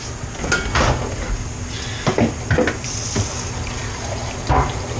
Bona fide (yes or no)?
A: yes